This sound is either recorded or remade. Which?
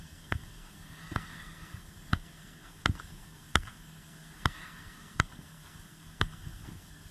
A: remade